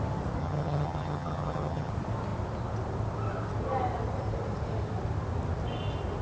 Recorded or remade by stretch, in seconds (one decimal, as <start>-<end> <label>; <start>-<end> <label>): 0.0-0.4 recorded; 0.4-1.9 remade; 1.9-6.2 recorded